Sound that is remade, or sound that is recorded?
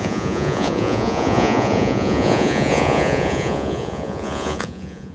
remade